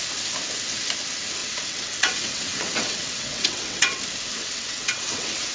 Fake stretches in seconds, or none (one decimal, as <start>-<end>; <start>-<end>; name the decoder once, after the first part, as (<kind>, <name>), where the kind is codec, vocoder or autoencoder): 1.4-4.0 (vocoder, WaveNeXt); 4.4-5.5